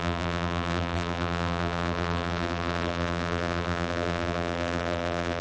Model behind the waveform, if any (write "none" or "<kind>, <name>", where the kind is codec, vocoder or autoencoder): vocoder, BigVGAN v2